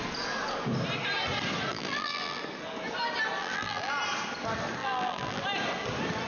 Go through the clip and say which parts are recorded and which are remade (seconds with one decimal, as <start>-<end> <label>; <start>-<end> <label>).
0.0-1.7 recorded; 1.7-2.4 remade; 2.4-3.4 recorded; 3.4-3.9 remade; 3.9-4.8 recorded; 4.8-5.4 remade; 5.4-6.3 recorded